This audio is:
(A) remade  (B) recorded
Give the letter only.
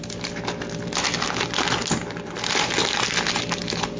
B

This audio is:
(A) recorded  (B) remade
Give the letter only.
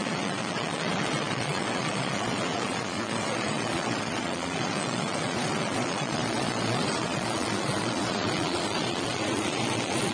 B